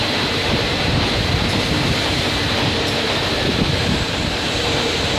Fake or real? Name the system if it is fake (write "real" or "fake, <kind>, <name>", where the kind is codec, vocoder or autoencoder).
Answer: fake, vocoder, BigVGAN v2